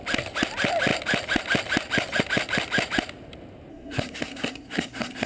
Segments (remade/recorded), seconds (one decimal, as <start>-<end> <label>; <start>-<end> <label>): 0.0-3.7 recorded; 3.7-5.3 remade